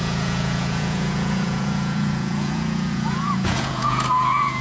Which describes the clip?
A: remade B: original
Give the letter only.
A